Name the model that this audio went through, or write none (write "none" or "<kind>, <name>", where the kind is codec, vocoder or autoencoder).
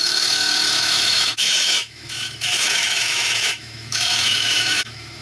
autoencoder, DAC-VAE